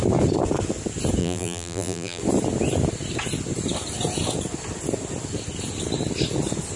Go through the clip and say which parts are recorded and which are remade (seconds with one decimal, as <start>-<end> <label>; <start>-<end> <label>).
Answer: 0.0-1.2 recorded; 1.2-2.2 remade; 2.2-6.8 recorded